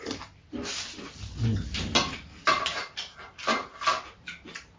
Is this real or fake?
real